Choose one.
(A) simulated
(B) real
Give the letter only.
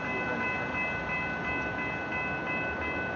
B